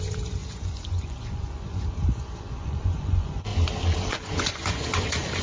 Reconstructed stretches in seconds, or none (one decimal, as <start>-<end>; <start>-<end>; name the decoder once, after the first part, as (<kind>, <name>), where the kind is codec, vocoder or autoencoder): 0.0-3.5 (vocoder, Vocos); 4.1-5.4